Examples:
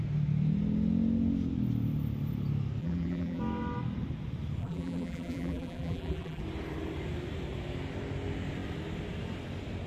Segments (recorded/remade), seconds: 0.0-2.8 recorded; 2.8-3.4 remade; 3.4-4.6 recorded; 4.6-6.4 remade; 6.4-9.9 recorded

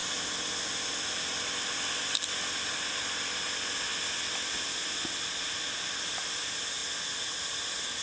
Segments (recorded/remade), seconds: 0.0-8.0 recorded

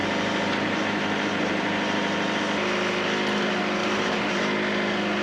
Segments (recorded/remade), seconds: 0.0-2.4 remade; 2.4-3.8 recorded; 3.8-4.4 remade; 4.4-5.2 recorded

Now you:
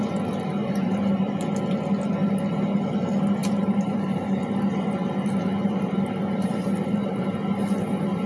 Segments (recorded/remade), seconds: 0.0-0.6 recorded; 0.6-1.3 remade; 1.3-3.4 recorded; 3.4-4.4 remade; 4.4-5.5 recorded; 5.5-7.3 remade; 7.3-8.3 recorded